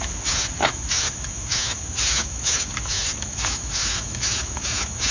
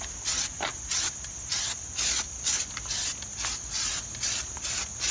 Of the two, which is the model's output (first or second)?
first